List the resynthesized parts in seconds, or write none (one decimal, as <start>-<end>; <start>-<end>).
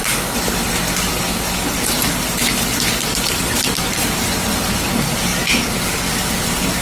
5.3-6.0